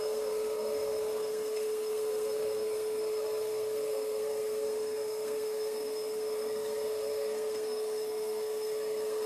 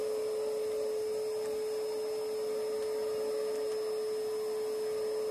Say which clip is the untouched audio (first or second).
second